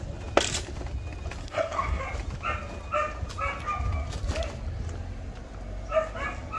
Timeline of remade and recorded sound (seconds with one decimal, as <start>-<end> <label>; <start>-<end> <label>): 0.0-1.4 recorded; 1.4-2.0 remade; 2.0-6.6 recorded